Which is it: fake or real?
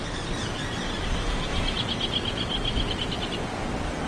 real